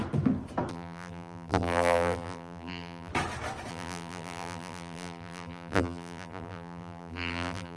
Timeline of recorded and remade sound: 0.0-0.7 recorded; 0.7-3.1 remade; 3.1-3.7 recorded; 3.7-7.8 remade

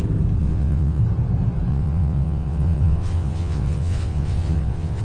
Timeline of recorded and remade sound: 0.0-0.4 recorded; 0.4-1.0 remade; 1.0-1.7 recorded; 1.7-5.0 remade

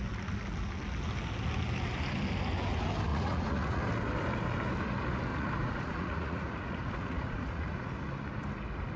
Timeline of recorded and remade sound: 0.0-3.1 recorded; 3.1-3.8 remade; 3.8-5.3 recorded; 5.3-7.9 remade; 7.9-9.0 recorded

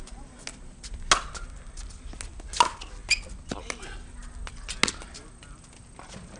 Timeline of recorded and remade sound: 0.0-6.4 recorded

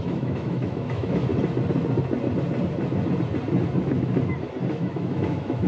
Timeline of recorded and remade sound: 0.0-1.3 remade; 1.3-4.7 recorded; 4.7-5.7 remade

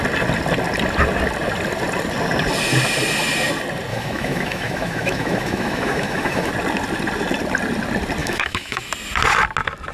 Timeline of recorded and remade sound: 0.0-3.9 recorded; 3.9-6.5 remade; 6.5-8.2 recorded; 8.2-8.9 remade; 8.9-9.9 recorded

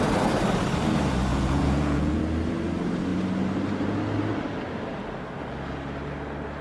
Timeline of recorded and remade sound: 0.0-1.3 recorded; 1.3-2.2 remade; 2.2-6.6 recorded